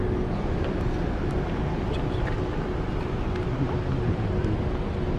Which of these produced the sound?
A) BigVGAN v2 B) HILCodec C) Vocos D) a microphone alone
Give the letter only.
D